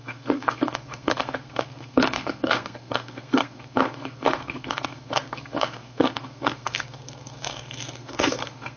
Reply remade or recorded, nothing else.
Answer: remade